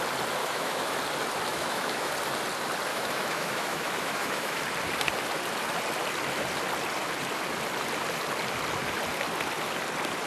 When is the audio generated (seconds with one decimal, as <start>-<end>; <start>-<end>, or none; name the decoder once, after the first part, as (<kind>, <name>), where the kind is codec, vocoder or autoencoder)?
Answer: 0.4-0.9 (autoencoder, DAC-VAE); 1.5-2.1; 2.9-4.6